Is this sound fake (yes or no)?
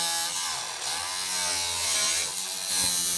no